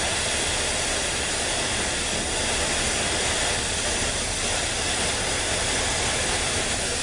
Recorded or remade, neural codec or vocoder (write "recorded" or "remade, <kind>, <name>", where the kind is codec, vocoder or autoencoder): recorded